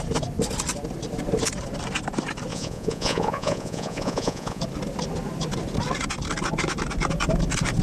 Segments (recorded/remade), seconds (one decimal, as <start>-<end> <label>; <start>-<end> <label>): 0.0-2.5 recorded; 2.5-4.6 remade; 4.6-7.8 recorded